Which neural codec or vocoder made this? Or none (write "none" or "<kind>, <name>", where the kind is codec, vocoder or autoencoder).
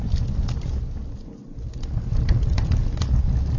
none